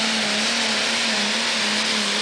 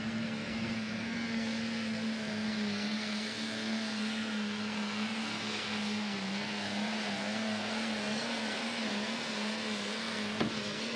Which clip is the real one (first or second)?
first